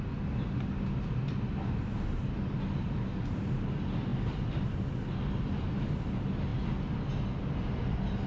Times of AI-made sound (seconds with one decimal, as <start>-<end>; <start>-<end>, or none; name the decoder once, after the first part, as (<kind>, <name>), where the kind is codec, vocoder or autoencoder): none